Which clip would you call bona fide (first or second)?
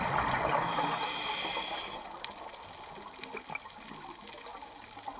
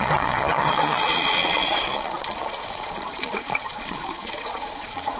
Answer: first